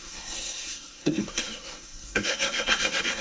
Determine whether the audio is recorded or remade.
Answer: remade